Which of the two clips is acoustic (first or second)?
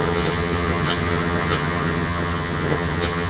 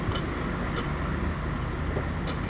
second